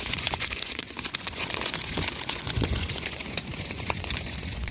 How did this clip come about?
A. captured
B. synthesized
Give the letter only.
B